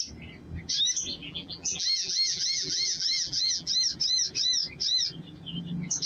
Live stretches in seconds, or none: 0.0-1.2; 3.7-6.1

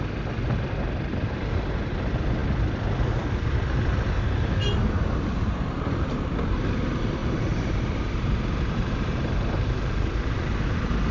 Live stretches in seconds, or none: 0.0-7.2; 10.2-11.1

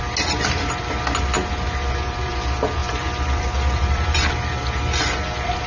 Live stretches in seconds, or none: 0.0-2.8; 4.3-5.7

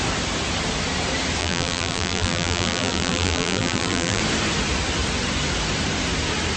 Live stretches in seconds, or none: 0.0-1.4; 4.2-6.6

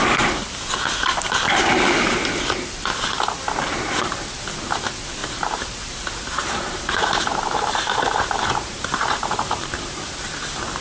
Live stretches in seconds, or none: 0.0-5.2; 10.3-10.8

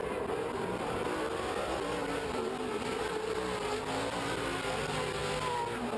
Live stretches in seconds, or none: 0.0-2.0; 2.9-6.0

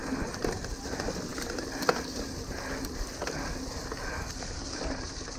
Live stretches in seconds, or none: 0.6-5.4